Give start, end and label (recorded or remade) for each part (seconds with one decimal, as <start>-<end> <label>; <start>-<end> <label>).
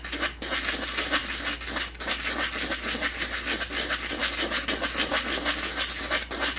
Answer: 0.0-6.6 recorded